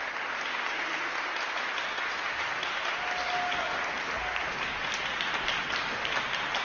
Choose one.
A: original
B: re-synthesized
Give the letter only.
A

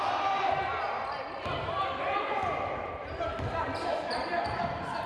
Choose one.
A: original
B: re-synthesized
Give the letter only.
A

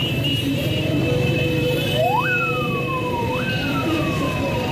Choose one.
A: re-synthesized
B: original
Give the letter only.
A